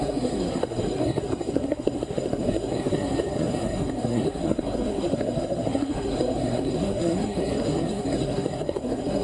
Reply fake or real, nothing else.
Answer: fake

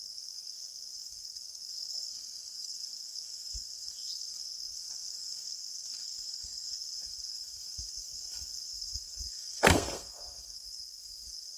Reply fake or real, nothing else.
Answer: fake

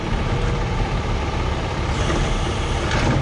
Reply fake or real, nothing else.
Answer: real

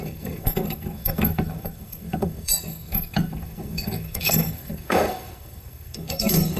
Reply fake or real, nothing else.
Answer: fake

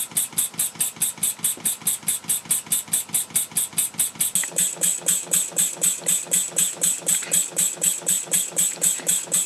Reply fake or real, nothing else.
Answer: real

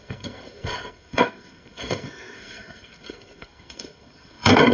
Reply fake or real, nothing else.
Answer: fake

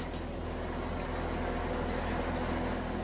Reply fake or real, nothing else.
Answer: real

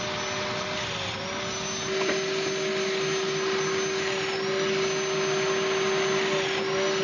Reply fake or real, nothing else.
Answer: real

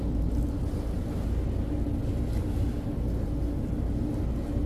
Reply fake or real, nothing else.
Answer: real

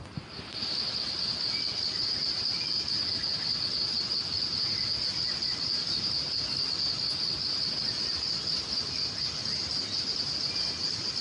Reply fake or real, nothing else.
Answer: real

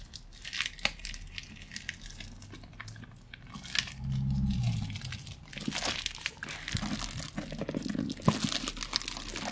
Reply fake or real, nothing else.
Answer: real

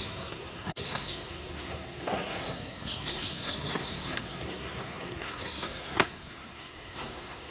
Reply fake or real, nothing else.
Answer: fake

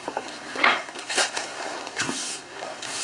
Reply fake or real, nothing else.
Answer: fake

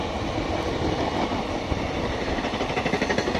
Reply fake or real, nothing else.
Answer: real